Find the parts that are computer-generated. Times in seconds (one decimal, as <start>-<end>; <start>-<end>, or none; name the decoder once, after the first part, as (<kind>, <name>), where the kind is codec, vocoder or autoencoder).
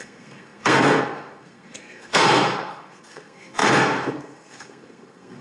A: 0.0-5.4 (codec, SNAC)